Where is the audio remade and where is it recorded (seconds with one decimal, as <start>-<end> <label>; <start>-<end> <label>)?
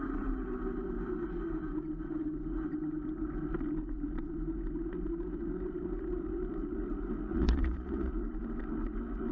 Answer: 0.0-7.3 recorded; 7.3-8.1 remade; 8.1-9.3 recorded